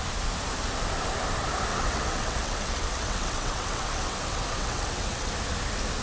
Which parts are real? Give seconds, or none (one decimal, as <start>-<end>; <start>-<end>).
0.0-1.7; 5.3-6.0